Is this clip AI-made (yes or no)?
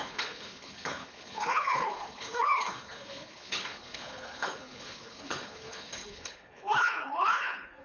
yes